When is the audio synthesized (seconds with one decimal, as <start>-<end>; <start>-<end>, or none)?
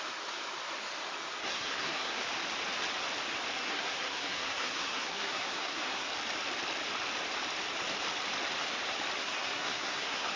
1.5-2.2; 3.6-6.1; 9.2-10.4